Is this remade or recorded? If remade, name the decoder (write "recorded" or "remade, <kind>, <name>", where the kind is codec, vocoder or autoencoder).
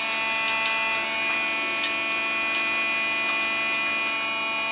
recorded